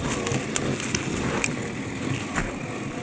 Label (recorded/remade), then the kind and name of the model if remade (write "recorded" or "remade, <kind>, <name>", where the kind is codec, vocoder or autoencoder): recorded